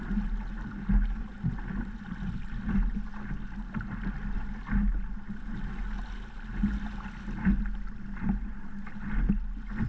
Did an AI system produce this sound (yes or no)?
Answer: no